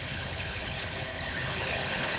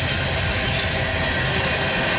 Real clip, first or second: second